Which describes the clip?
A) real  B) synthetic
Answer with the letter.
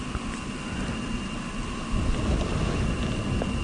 A